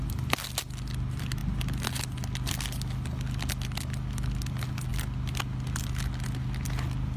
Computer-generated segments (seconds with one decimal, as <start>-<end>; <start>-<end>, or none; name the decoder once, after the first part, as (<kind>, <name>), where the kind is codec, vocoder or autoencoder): none